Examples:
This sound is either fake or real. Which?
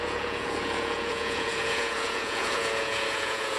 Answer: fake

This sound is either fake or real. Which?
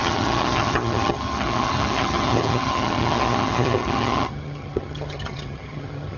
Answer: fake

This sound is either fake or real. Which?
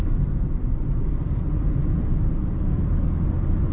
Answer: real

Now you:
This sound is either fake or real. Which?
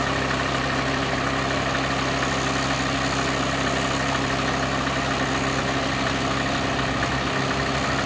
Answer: real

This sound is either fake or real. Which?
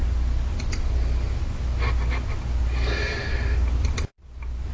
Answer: real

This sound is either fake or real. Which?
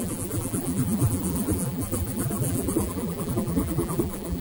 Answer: fake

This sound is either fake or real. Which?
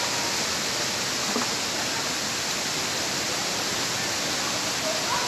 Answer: real